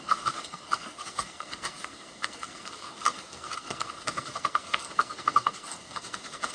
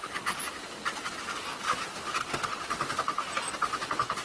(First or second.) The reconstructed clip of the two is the first